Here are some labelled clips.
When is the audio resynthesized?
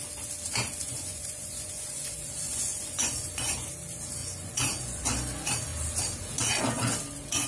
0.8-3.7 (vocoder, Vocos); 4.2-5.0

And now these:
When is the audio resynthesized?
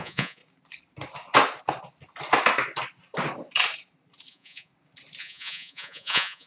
0.0-0.4 (vocoder, Vocos); 4.3-4.7; 5.2-6.5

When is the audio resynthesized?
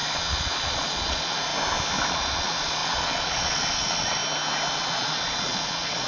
0.0-1.5 (vocoder, Vocos); 2.1-4.2; 4.7-6.1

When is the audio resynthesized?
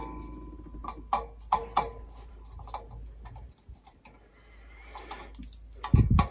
none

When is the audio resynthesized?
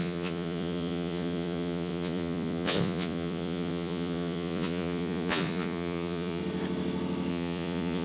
0.0-6.4 (vocoder, Vocos); 7.3-8.0